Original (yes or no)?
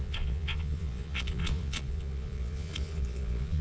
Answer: no